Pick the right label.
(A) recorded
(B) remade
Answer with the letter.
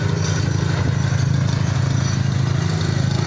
A